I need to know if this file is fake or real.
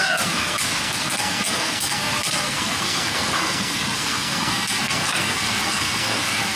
fake